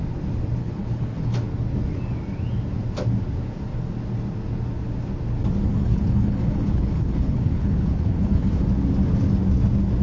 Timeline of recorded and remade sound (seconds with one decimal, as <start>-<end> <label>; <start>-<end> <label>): 0.0-0.6 recorded; 0.6-1.3 remade; 1.3-5.7 recorded; 5.7-8.5 remade; 8.5-10.0 recorded